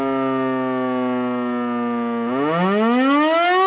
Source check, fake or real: real